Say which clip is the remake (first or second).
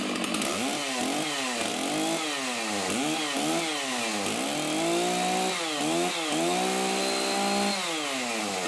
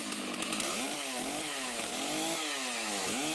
second